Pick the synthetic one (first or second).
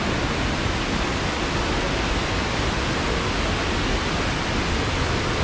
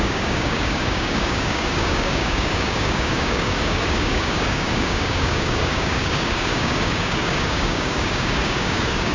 second